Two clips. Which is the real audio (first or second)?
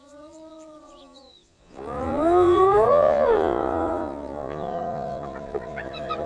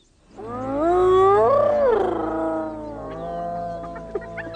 second